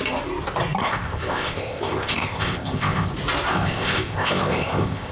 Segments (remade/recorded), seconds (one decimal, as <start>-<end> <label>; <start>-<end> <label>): 0.0-0.8 recorded; 0.8-3.1 remade; 3.1-3.5 recorded; 3.5-5.1 remade